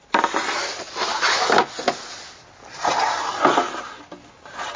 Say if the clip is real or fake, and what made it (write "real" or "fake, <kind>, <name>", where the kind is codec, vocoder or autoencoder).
real